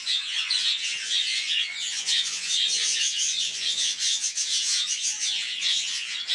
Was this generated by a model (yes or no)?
yes